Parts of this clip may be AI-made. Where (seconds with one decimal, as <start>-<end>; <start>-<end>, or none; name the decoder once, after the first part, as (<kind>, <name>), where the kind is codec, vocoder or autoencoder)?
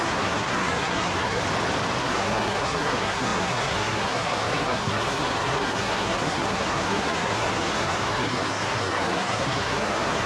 0.0-1.4 (codec, SNAC); 2.0-10.3